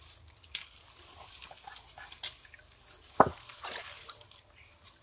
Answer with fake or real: real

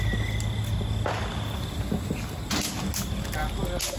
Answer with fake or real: real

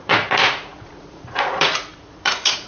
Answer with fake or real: fake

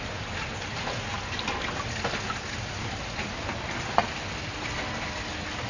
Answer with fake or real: real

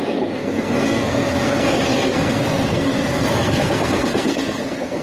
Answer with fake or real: fake